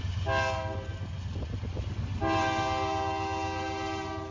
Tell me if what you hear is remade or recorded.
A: recorded